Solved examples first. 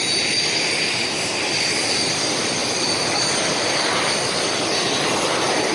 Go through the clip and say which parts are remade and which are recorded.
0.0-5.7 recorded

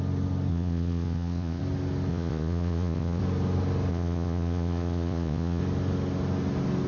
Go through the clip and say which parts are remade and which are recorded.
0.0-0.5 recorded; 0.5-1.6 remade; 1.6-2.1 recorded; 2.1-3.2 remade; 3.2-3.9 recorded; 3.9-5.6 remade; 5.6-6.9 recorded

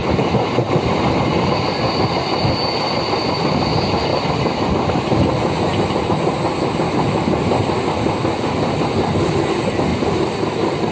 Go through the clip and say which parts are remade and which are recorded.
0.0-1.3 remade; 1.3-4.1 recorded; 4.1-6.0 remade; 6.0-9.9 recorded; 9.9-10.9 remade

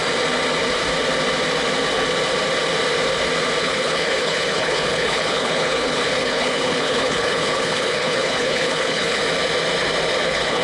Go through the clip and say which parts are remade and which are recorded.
0.0-3.6 recorded; 3.6-9.2 remade; 9.2-10.2 recorded; 10.2-10.6 remade

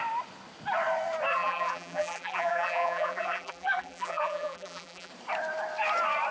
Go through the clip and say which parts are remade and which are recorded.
0.0-1.3 recorded; 1.3-5.1 remade; 5.1-6.3 recorded